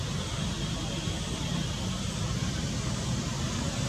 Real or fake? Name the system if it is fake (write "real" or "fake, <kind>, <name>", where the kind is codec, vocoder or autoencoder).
real